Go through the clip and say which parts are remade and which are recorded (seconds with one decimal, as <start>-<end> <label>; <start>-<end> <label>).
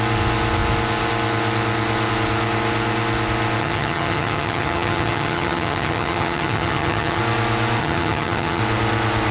0.0-3.6 recorded; 3.6-7.2 remade; 7.2-7.8 recorded; 7.8-8.6 remade; 8.6-9.3 recorded